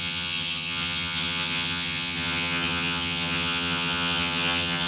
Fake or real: fake